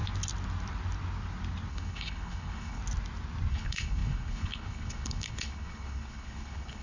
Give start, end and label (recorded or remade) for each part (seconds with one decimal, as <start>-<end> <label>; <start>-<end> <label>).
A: 0.0-1.7 recorded; 1.7-2.8 remade; 2.8-3.5 recorded; 3.5-6.8 remade